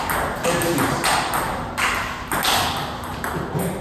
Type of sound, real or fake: real